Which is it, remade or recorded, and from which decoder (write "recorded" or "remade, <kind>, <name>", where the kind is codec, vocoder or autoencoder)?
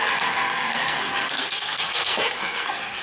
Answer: remade, codec, SNAC